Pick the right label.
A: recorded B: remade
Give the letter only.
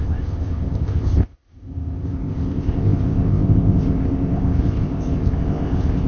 B